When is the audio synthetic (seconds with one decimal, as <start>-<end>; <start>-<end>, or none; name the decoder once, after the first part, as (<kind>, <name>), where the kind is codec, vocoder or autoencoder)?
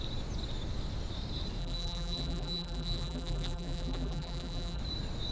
1.6-4.8 (vocoder, BigVGAN v2)